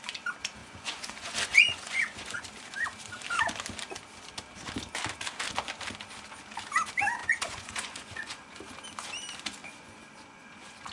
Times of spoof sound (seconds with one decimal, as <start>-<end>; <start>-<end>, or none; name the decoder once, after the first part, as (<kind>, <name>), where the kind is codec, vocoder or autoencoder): 0.6-2.4 (vocoder, Vocos); 7.2-8.6; 9.6-10.9